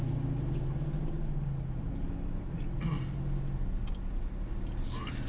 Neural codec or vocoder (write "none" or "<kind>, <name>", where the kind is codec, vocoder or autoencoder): none